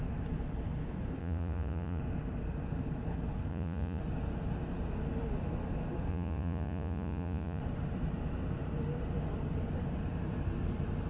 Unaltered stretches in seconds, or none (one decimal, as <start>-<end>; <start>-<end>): 0.0-1.2; 2.0-3.5; 4.0-6.1; 7.6-11.1